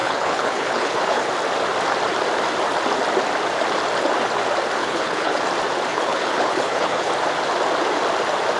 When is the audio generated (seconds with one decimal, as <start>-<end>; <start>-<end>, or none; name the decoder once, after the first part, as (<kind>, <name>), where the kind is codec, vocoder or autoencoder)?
0.0-1.3 (codec, HILCodec); 4.8-5.4; 5.9-7.1